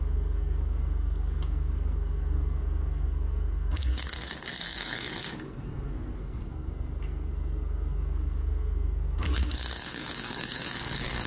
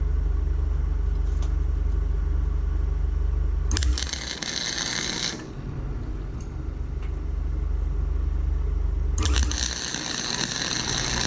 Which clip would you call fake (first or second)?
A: first